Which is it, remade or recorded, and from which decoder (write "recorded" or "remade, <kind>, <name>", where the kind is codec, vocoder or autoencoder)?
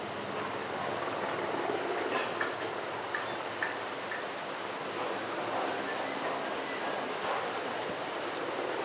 recorded